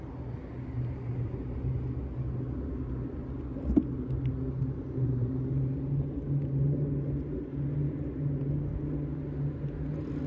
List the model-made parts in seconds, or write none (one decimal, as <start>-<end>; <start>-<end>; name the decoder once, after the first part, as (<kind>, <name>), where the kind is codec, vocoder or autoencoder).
0.5-1.6 (vocoder, BigVGAN v2); 4.6-5.9